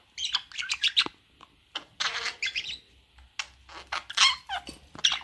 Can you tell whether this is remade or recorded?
recorded